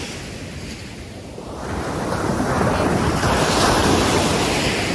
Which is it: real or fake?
real